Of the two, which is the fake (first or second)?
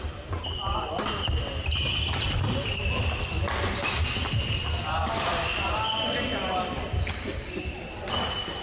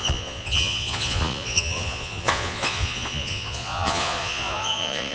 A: second